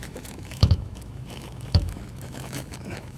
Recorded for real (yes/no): no